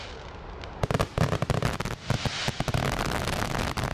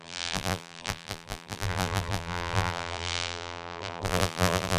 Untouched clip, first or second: first